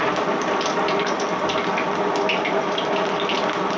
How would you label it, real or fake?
real